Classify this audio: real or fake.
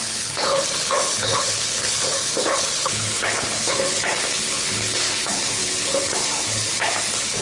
fake